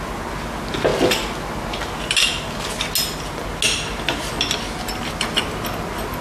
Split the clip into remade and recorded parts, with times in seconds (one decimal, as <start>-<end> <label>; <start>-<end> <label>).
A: 0.0-6.2 recorded